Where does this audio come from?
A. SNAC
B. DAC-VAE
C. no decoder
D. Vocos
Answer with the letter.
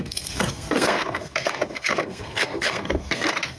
A